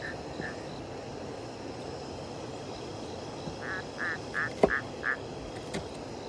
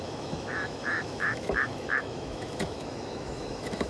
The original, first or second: first